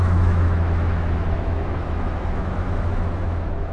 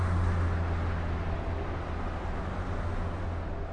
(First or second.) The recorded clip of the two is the second